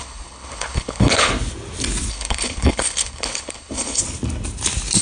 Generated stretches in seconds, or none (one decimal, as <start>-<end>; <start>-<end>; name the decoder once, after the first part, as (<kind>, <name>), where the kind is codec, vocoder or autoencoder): 0.0-1.3 (codec, HILCodec); 2.1-4.0